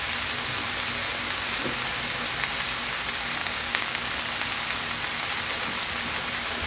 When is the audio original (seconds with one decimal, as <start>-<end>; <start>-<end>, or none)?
0.0-3.4; 4.1-6.7